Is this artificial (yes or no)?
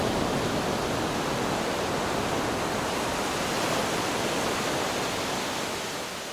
no